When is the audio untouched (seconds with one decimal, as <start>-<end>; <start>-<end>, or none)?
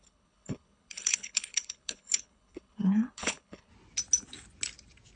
3.7-5.2